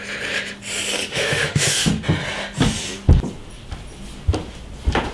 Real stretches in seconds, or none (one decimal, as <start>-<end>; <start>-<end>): 0.0-1.1; 1.9-5.1